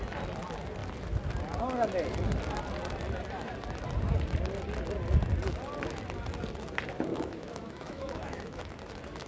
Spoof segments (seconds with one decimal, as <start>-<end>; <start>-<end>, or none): 7.1-8.7